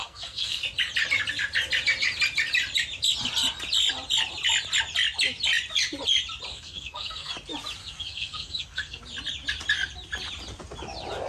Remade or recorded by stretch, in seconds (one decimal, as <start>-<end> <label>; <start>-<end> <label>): 0.0-0.6 remade; 0.6-6.5 recorded; 6.5-7.3 remade; 7.3-7.8 recorded; 7.8-9.0 remade; 9.0-11.3 recorded